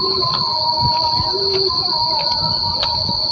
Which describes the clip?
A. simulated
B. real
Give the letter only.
B